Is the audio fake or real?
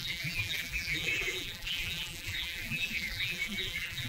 fake